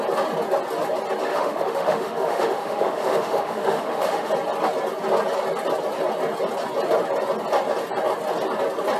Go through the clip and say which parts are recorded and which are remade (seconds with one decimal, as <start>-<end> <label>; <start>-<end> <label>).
0.0-1.3 recorded; 1.3-4.3 remade; 4.3-9.0 recorded